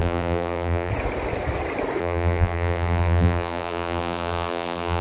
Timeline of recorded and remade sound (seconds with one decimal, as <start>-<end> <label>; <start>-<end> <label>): 0.0-0.9 remade; 0.9-2.0 recorded; 2.0-5.0 remade